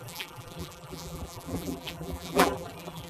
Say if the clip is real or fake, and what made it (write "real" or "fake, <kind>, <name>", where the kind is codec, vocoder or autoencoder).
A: fake, vocoder, BigVGAN v2